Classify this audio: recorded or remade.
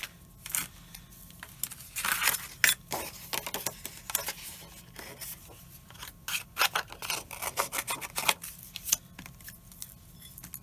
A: recorded